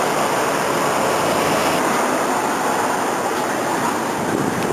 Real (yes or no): no